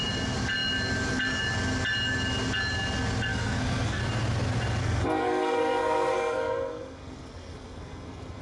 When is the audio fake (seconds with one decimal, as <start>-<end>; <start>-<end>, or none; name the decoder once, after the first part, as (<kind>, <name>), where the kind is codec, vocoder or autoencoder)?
3.3-4.0 (codec, SNAC); 4.8-8.4